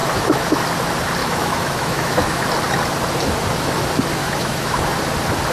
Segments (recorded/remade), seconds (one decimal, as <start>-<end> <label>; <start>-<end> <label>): 0.0-0.6 remade; 0.6-1.2 recorded; 1.2-2.4 remade; 2.4-4.2 recorded; 4.2-4.8 remade; 4.8-5.5 recorded